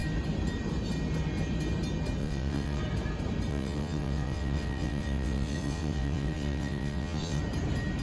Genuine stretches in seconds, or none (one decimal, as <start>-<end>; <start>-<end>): 0.0-2.2; 2.8-3.5; 7.4-8.0